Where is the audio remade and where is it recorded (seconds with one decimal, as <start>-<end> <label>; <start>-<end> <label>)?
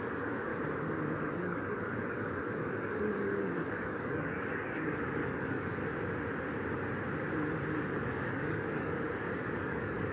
0.0-0.5 remade; 0.5-1.2 recorded; 1.2-5.8 remade; 5.8-7.8 recorded; 7.8-10.1 remade